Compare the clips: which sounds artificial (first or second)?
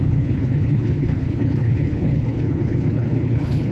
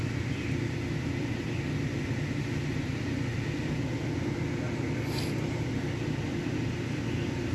first